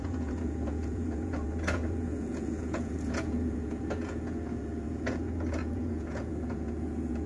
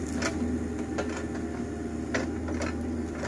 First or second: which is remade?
first